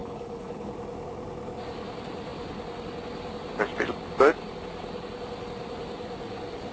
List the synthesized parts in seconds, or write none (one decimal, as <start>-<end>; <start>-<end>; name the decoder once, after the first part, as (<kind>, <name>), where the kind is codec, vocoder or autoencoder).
0.0-0.7 (codec, HILCodec)

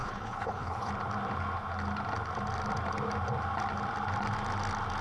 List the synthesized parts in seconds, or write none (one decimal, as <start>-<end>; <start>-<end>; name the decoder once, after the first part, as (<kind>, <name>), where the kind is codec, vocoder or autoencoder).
0.0-0.9 (codec, HILCodec)